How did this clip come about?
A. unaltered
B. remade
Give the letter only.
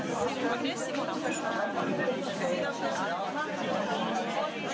A